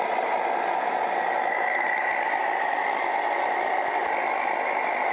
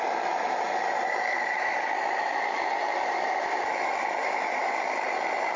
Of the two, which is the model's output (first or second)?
second